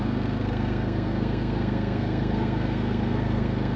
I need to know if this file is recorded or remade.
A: remade